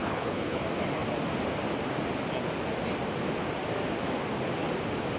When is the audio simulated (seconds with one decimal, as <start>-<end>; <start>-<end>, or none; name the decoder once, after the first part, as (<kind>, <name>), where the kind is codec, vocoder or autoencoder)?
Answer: 0.0-0.6 (codec, HILCodec)